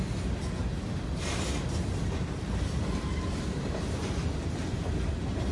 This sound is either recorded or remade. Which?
recorded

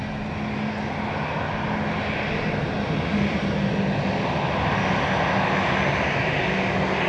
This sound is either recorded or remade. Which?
recorded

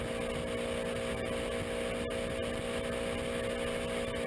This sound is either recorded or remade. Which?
recorded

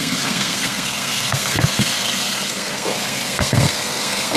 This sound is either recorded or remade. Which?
remade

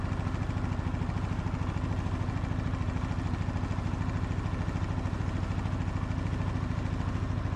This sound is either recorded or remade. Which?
recorded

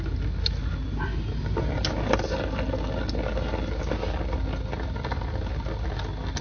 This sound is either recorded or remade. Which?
recorded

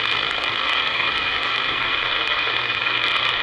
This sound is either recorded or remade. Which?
remade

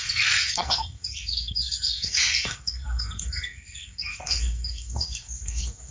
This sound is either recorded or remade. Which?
remade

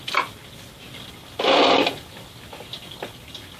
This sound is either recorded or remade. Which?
recorded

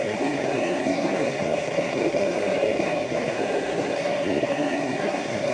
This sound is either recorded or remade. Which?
remade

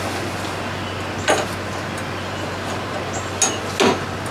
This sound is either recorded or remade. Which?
recorded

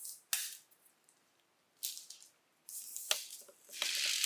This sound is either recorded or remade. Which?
recorded